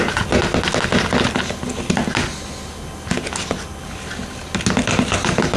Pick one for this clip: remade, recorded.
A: recorded